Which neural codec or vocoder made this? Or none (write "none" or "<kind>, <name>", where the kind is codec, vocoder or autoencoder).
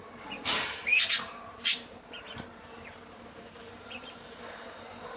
vocoder, BigVGAN v2